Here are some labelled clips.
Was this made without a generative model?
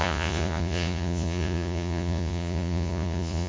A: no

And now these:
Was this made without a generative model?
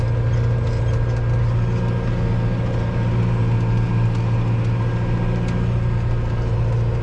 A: yes